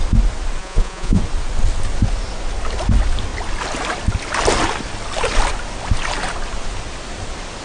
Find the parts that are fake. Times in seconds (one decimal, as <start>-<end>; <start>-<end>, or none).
0.6-1.2